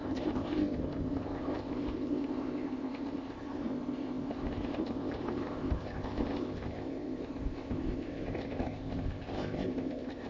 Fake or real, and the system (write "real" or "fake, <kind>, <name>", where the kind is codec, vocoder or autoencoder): fake, codec, ZipCodec